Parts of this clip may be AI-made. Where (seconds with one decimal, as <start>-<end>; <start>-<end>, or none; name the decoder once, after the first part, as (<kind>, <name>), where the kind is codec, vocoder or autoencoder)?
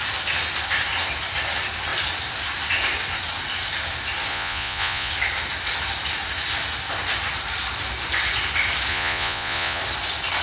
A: 4.3-5.1 (vocoder, Vocos); 8.9-9.8